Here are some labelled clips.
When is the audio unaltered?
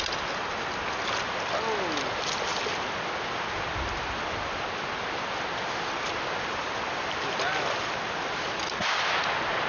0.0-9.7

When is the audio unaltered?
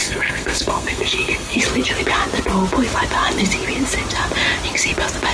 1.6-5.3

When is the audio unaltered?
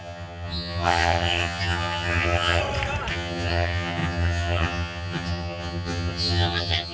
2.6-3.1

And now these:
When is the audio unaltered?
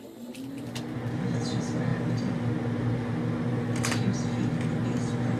0.0-5.4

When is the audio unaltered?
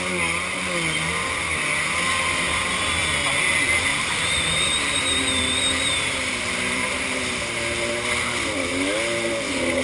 0.0-3.9; 7.4-9.8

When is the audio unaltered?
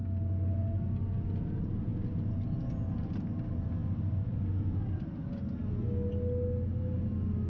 0.0-3.8; 5.7-7.5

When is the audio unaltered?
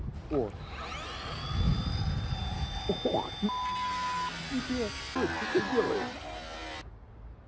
0.0-7.5